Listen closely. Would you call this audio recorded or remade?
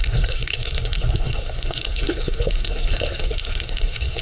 remade